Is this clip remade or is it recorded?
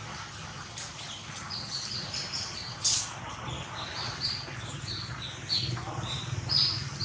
recorded